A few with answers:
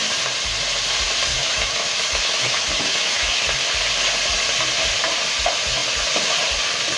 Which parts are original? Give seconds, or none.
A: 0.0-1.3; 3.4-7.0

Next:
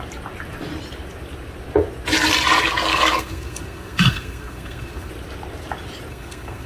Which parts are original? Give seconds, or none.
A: 0.0-2.9; 5.1-6.1